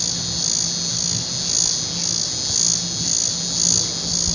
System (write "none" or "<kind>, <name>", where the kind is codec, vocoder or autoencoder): none